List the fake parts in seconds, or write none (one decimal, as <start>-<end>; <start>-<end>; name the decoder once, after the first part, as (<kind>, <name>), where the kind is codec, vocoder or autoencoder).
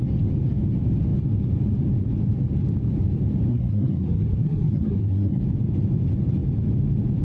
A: 3.5-5.4 (codec, SNAC)